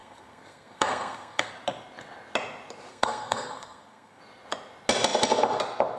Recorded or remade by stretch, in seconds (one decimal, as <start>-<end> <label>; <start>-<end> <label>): 0.0-1.5 remade; 1.5-2.9 recorded; 2.9-4.2 remade; 4.2-6.0 recorded

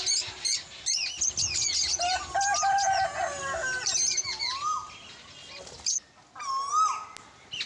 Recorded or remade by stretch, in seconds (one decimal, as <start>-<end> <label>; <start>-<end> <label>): 0.0-7.7 recorded

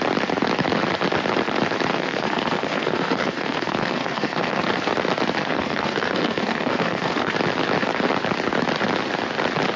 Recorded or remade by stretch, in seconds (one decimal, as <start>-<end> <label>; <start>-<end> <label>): 0.0-1.9 recorded; 1.9-4.6 remade; 4.6-5.4 recorded; 5.4-7.3 remade; 7.3-9.8 recorded

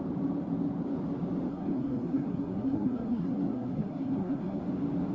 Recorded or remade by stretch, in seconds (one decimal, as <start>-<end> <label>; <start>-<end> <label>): 0.0-1.5 recorded; 1.5-4.6 remade; 4.6-5.1 recorded

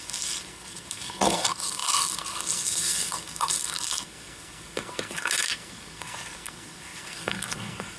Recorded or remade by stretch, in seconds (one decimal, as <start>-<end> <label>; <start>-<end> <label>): 0.0-8.0 remade

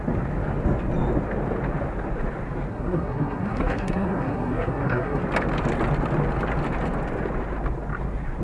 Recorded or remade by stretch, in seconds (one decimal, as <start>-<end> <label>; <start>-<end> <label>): 0.0-2.7 recorded; 2.7-5.2 remade; 5.2-8.4 recorded

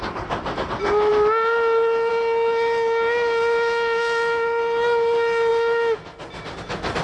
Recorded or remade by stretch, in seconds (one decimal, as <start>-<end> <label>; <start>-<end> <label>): 0.0-7.0 recorded